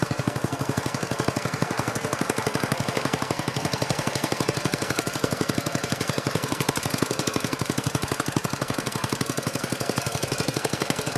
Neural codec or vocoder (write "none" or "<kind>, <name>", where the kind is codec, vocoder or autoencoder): codec, SNAC